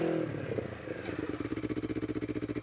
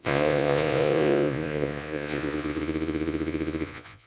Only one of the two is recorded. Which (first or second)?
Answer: first